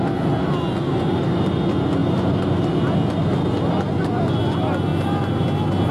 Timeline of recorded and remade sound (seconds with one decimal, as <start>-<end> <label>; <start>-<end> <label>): 0.0-5.9 recorded